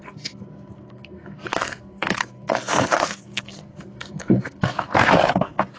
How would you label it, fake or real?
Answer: fake